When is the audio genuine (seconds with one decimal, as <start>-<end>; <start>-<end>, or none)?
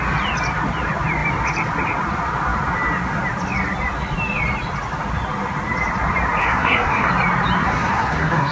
0.0-6.4; 7.1-7.6